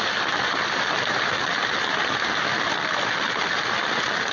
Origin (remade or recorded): recorded